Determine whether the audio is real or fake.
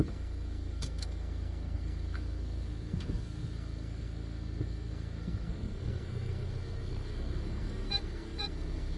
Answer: fake